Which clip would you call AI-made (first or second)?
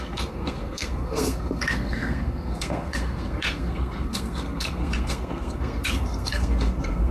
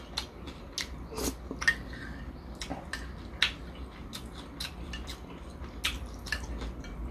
first